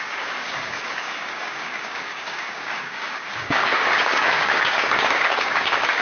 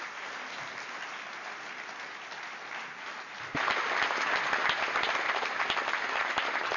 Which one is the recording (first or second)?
second